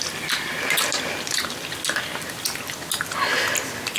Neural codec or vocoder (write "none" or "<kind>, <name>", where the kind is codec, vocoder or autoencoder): none